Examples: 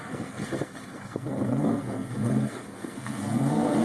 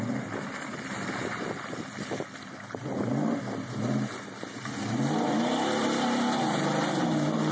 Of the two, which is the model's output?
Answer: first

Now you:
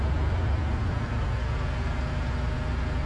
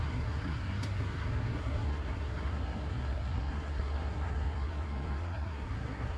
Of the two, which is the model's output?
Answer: second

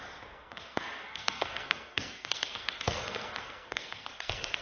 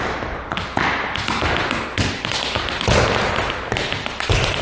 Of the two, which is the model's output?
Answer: first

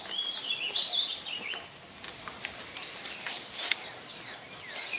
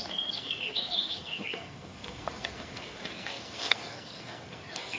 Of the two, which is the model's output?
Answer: second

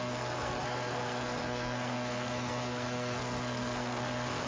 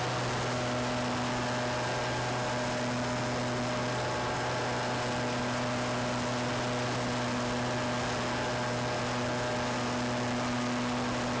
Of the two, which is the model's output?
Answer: first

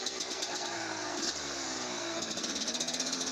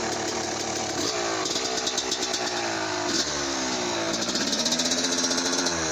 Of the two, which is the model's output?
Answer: first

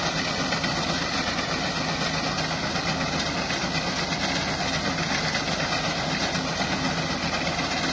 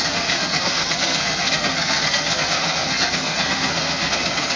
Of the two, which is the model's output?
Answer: second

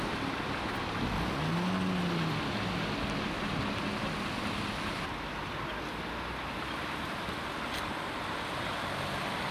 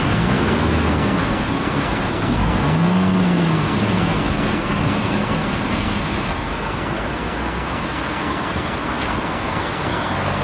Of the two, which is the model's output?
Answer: second